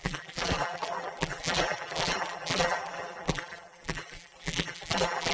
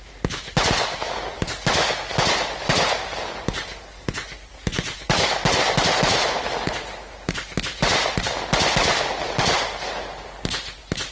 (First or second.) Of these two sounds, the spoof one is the first